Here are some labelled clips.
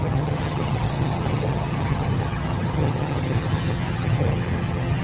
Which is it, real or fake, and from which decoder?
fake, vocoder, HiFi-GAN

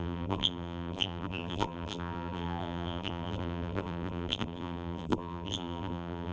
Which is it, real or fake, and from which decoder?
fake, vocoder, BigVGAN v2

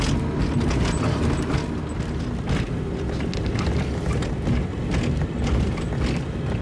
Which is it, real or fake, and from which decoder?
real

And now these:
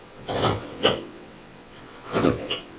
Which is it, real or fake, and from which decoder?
fake, vocoder, WaveNeXt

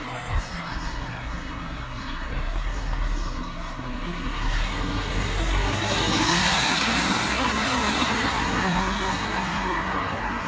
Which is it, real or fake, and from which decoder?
fake, codec, SNAC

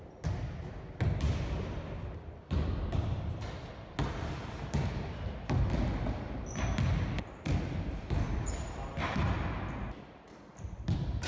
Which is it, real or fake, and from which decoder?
real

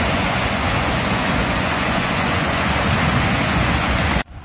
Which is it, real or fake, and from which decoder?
fake, vocoder, Vocos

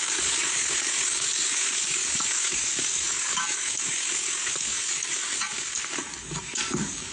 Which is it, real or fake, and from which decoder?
fake, codec, DAC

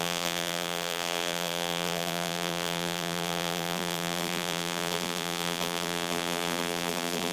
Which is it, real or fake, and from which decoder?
fake, vocoder, BigVGAN v2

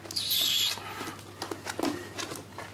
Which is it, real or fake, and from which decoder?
real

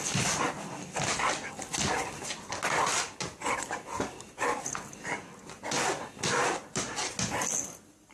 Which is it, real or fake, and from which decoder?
real